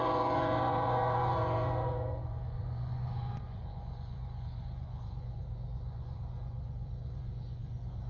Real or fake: fake